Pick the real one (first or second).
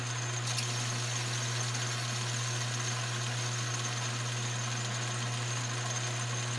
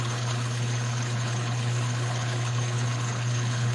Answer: first